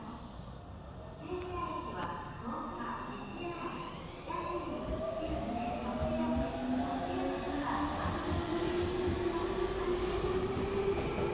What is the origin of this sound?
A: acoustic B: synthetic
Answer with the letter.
A